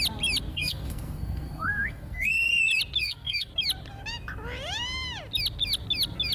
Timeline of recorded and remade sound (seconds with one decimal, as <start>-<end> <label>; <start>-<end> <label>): 0.0-0.5 recorded; 0.5-2.5 remade; 2.5-3.0 recorded; 3.0-3.5 remade; 3.5-6.3 recorded